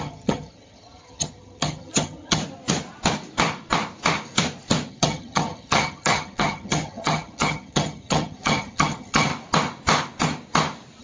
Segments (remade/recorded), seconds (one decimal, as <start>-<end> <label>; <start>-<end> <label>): 0.0-2.4 remade; 2.4-4.9 recorded; 4.9-9.3 remade; 9.3-11.0 recorded